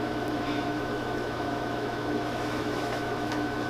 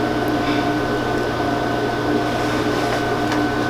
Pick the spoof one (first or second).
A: first